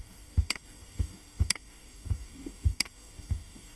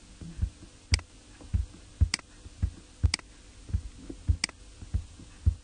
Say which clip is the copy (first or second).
first